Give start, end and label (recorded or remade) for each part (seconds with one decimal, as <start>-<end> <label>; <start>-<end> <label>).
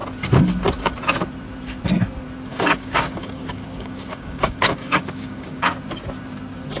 0.0-2.5 recorded; 2.5-5.7 remade; 5.7-6.8 recorded